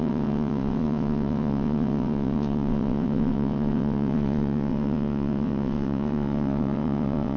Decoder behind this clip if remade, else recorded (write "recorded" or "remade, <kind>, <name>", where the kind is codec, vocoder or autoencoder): remade, vocoder, WaveNeXt